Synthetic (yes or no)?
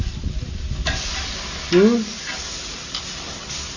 no